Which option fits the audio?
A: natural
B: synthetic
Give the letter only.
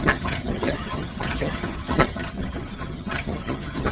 B